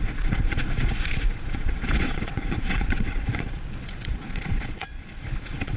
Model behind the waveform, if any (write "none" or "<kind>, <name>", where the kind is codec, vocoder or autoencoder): vocoder, Vocos